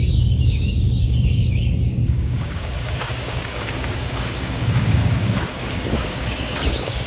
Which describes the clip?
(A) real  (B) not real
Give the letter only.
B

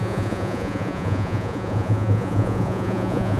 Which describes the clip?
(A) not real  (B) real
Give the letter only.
A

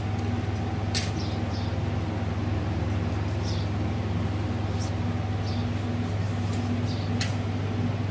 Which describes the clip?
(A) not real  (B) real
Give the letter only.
B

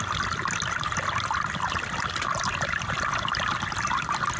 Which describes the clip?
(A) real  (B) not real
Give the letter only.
A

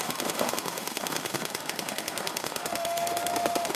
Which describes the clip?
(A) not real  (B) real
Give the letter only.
A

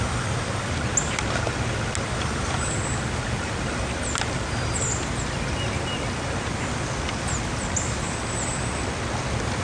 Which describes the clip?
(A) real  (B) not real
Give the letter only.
A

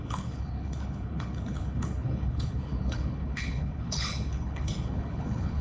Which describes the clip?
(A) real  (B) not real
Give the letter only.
B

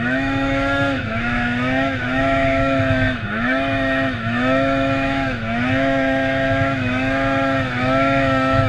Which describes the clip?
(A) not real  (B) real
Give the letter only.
A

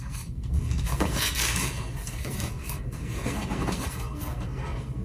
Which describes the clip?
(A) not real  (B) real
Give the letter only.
A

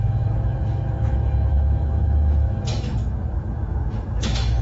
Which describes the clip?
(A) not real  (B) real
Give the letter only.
A